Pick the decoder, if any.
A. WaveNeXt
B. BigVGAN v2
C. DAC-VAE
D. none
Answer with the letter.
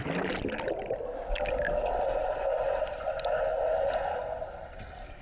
D